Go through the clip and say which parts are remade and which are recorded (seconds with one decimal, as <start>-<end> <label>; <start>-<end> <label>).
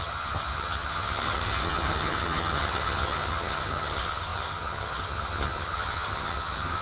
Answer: 0.0-6.8 remade